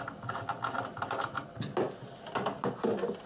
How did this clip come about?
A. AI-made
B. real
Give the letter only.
B